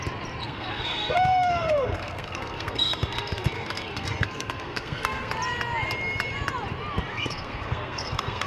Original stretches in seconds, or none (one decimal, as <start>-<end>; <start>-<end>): 0.0-0.4; 5.3-7.1